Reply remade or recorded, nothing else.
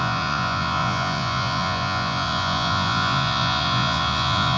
remade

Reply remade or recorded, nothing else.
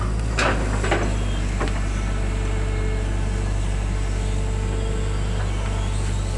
recorded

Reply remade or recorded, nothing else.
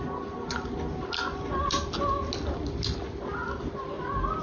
recorded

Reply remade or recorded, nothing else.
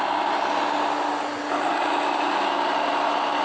recorded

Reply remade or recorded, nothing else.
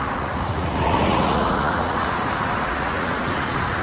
remade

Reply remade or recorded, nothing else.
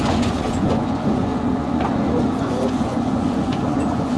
remade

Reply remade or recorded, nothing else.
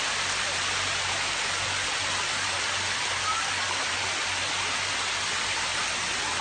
recorded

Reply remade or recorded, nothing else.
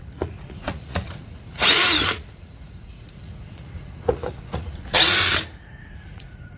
remade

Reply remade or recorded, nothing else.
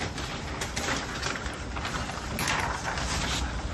recorded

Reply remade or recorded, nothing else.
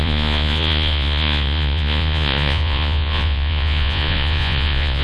remade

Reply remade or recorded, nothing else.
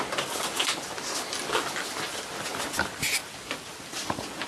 recorded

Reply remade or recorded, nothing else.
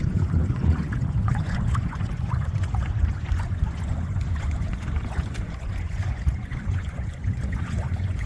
remade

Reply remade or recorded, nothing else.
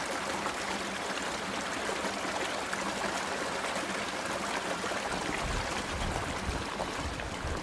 recorded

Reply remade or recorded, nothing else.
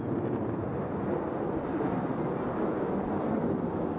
recorded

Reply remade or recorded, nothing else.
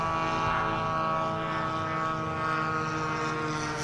recorded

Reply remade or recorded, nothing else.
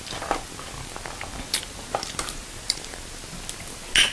recorded